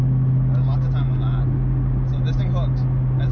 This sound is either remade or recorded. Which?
recorded